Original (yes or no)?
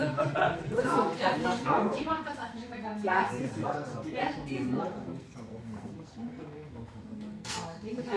no